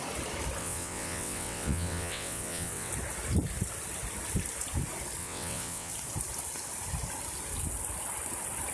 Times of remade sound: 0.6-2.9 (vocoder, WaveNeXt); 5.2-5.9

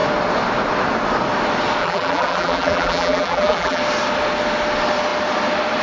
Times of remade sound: 1.8-3.8 (vocoder, BigVGAN v2)

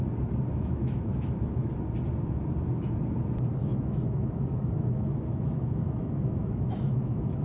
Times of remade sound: 0.5-1.7 (autoencoder, DAC-VAE); 3.6-7.4

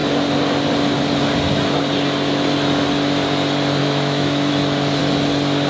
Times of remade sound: 3.8-4.5 (autoencoder, DAC-VAE)

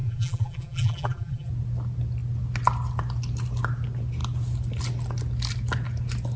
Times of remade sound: 0.0-1.5 (vocoder, BigVGAN v2)